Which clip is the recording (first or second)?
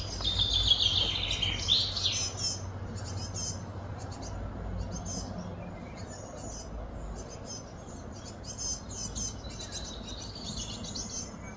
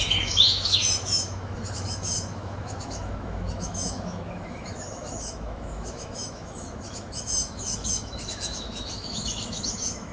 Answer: first